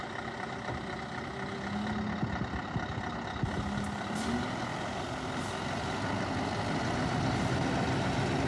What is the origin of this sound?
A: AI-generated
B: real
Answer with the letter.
B